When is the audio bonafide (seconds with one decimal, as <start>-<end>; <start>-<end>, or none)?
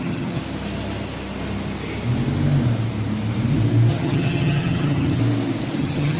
0.4-3.9; 5.2-5.8